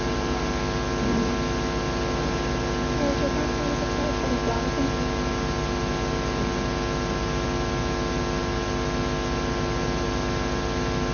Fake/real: real